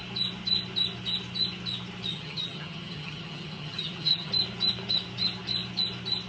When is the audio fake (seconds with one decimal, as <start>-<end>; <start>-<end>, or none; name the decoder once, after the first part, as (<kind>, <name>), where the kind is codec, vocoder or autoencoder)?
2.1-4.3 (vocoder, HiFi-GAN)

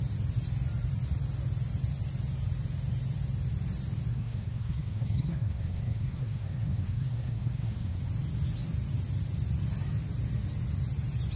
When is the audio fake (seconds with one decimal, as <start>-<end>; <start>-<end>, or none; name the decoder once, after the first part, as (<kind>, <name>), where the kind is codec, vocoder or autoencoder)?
4.1-8.0 (codec, SNAC)

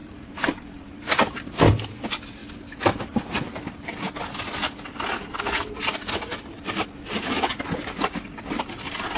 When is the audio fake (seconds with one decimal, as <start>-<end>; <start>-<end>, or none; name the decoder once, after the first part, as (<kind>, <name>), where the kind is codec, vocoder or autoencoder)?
0.0-0.9 (vocoder, BigVGAN v2)

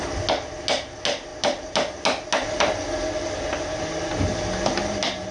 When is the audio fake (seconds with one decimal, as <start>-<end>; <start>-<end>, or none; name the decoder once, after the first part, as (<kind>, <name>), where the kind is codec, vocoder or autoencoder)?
none

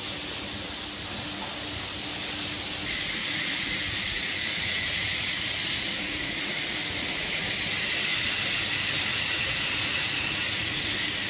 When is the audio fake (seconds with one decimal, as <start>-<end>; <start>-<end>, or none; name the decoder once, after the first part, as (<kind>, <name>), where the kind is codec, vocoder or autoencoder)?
3.2-7.3 (vocoder, Vocos); 9.1-10.9

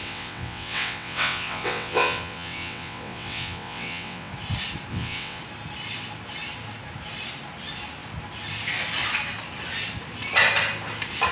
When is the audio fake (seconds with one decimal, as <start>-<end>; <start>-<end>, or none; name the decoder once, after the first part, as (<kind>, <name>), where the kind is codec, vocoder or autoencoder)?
0.0-4.3 (vocoder, WaveNeXt); 4.9-5.4

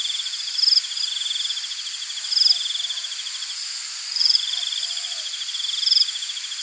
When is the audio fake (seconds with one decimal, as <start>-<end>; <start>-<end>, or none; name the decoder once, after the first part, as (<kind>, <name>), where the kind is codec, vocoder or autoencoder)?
4.1-5.3 (vocoder, Vocos)